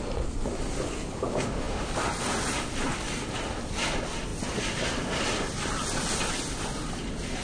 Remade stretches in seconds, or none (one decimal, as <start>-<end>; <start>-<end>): 1.3-1.9